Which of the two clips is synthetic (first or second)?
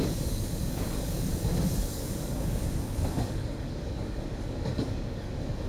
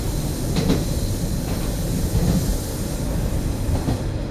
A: first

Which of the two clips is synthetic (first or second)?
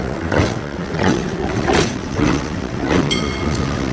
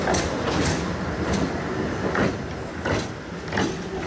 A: first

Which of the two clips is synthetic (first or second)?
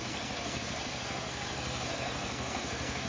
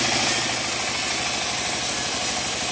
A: first